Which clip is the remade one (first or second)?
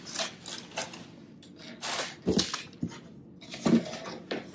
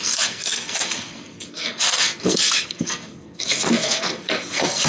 second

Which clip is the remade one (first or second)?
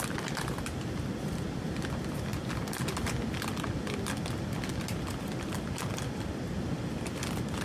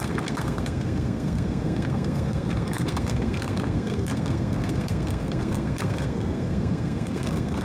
second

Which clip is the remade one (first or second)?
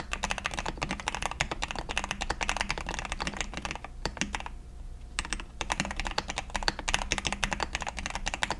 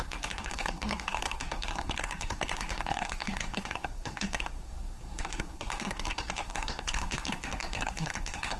second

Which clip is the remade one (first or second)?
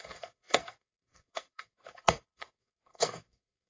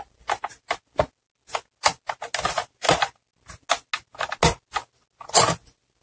first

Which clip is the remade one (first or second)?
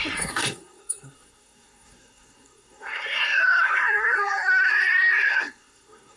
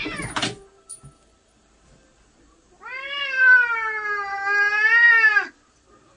first